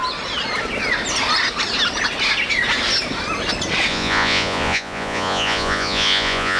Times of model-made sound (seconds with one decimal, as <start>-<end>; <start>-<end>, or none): 3.9-6.6